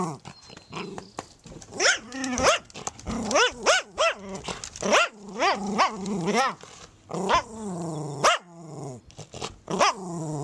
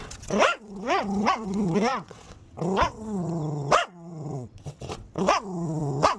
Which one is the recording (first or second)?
first